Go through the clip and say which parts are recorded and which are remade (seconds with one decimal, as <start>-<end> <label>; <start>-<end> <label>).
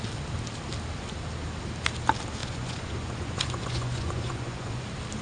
0.0-2.4 recorded; 2.4-4.8 remade; 4.8-5.2 recorded